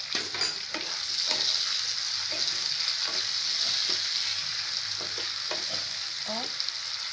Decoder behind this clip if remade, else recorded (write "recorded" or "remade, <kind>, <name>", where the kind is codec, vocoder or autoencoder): recorded